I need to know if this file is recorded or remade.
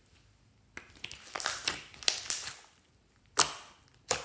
recorded